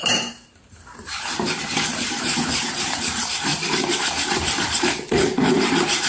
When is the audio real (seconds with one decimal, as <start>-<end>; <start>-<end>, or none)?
none